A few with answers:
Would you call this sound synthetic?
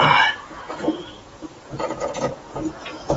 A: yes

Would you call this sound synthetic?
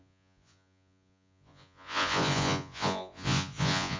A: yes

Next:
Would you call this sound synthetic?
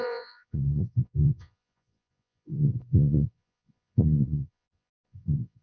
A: yes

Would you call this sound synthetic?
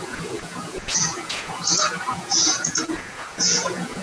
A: yes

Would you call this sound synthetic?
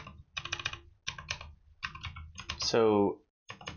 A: no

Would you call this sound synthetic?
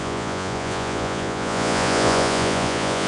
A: yes